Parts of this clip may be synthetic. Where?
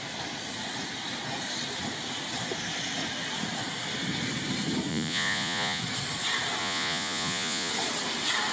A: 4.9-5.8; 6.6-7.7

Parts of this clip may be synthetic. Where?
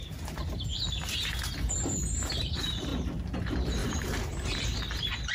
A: 0.0-2.9; 3.4-5.3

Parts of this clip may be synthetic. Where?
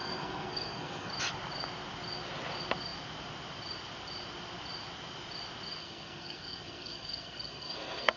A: 0.0-1.1; 5.8-8.2